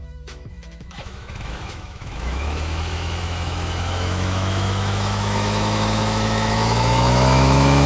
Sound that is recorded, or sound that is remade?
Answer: remade